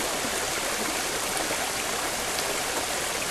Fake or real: real